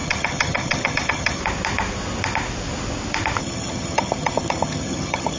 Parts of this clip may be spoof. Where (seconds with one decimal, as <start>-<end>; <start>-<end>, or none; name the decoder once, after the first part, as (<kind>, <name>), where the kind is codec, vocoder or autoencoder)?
0.0-1.4 (vocoder, HiFi-GAN); 3.4-5.4